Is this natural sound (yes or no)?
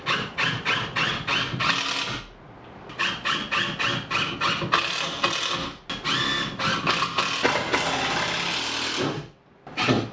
yes